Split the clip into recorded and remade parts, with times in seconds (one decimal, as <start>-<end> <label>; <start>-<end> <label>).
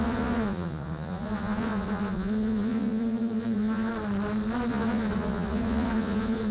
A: 0.0-3.9 remade; 3.9-4.7 recorded; 4.7-6.5 remade